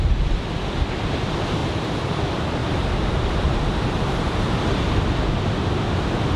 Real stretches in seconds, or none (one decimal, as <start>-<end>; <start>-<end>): 0.0-1.6; 2.2-2.6; 4.5-6.4